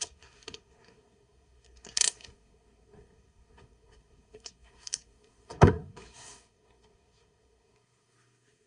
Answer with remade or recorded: remade